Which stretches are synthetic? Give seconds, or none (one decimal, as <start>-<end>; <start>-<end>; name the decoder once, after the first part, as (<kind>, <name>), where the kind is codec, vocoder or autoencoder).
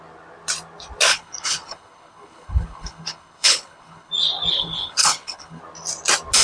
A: 1.1-4.1 (codec, HILCodec); 4.5-5.6